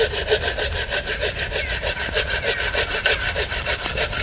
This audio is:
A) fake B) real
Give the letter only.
B